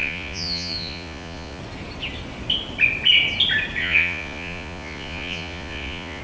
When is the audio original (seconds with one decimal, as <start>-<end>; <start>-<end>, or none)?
1.6-3.8